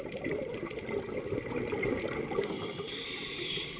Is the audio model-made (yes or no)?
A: no